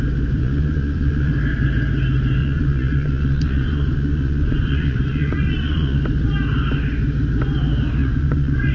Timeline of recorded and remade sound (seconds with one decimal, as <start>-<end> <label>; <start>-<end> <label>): 0.0-0.4 recorded; 0.4-1.3 remade; 1.3-2.4 recorded; 2.4-6.0 remade; 6.0-8.0 recorded; 8.0-8.7 remade